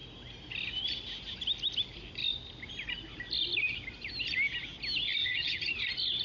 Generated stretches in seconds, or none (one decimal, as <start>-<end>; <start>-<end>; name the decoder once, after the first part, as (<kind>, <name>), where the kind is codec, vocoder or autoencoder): 5.2-5.7 (vocoder, HiFi-GAN)